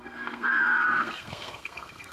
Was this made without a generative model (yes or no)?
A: no